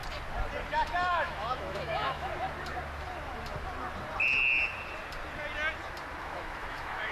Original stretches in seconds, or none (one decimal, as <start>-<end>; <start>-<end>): 0.0-0.7; 2.3-6.2